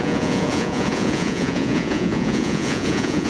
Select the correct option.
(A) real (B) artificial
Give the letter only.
B